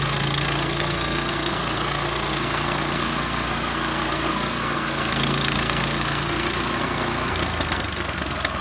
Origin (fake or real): fake